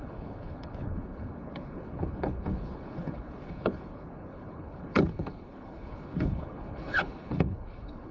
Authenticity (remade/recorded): remade